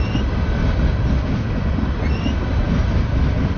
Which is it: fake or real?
real